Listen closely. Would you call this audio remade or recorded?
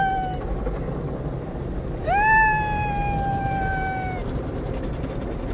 recorded